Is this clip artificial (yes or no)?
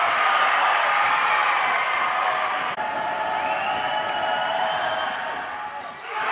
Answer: no